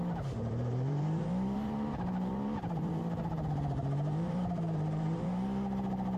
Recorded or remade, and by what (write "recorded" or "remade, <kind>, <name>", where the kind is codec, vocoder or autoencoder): remade, vocoder, BigVGAN v2